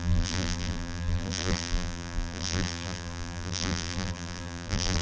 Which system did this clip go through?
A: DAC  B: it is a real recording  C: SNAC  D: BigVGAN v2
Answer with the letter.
D